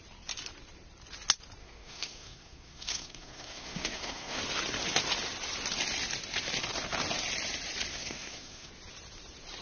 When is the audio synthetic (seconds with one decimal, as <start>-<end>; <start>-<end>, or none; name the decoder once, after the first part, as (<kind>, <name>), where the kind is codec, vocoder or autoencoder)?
1.6-4.4 (codec, SNAC); 7.9-8.7